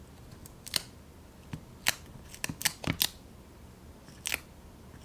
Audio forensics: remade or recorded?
recorded